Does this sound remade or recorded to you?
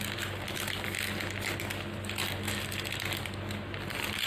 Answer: recorded